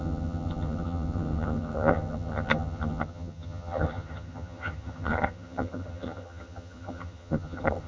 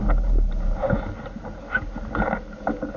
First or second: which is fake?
first